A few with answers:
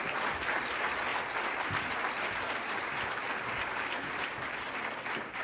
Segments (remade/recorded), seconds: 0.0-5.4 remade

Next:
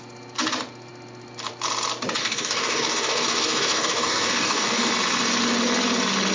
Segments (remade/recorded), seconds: 0.0-2.2 recorded; 2.2-4.9 remade; 4.9-6.3 recorded

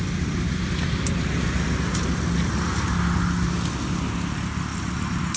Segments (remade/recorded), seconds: 0.0-4.7 recorded; 4.7-5.4 remade

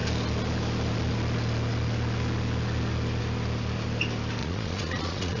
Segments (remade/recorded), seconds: 0.0-4.4 recorded; 4.4-5.4 remade